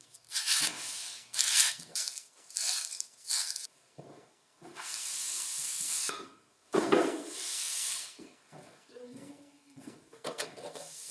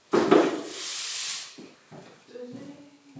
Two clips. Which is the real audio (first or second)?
second